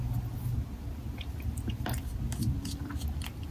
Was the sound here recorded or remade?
recorded